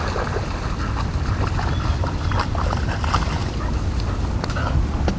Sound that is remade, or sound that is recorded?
recorded